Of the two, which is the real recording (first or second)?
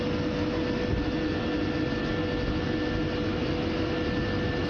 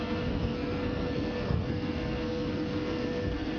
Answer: first